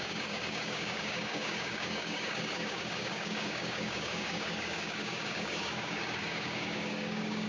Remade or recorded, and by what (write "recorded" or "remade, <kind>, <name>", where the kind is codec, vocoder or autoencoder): remade, codec, DAC